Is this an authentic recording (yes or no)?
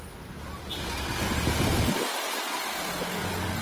yes